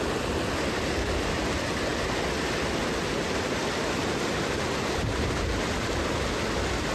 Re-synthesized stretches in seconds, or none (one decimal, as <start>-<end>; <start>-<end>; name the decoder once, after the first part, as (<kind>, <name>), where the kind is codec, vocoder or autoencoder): none